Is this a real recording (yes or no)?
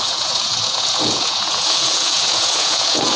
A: no